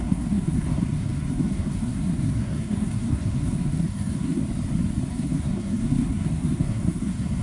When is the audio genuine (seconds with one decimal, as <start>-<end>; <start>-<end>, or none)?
4.4-5.1